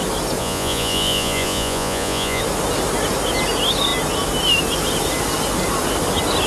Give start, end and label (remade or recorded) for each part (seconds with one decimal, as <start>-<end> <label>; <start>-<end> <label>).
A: 0.0-0.4 recorded; 0.4-2.4 remade; 2.4-6.5 recorded